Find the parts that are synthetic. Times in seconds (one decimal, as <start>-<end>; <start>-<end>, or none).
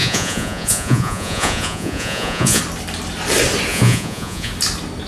0.0-2.6; 3.7-4.5